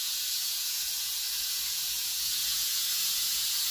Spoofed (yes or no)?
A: yes